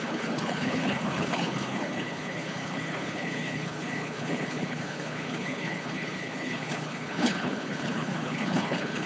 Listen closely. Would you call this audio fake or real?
fake